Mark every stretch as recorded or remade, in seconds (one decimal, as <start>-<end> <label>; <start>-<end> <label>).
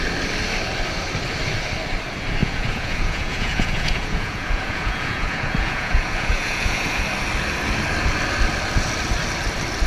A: 0.0-2.4 recorded; 2.4-7.0 remade; 7.0-9.9 recorded